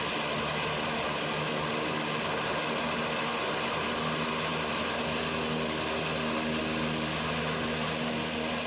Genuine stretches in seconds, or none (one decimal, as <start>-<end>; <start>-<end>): 0.0-8.7